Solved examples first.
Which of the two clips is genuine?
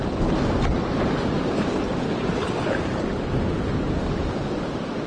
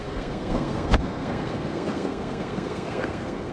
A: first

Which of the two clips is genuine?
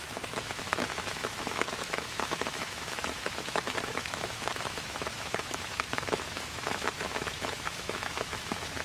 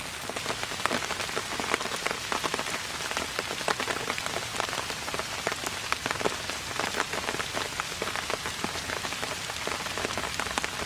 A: second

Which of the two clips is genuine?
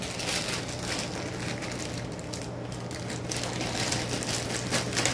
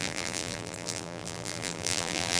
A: first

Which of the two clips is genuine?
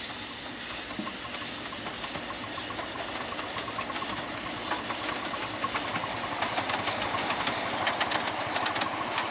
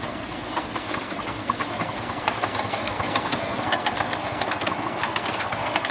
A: first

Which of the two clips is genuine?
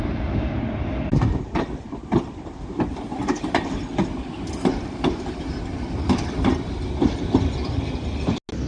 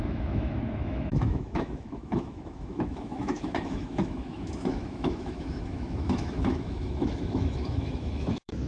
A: first